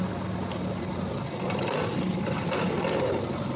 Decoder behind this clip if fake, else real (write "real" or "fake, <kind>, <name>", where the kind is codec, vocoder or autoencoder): real